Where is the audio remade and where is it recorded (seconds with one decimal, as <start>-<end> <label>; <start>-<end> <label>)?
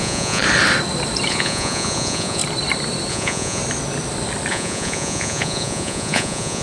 0.0-0.4 remade; 0.4-1.3 recorded; 1.3-2.4 remade; 2.4-3.1 recorded; 3.1-3.6 remade; 3.6-4.5 recorded; 4.5-6.6 remade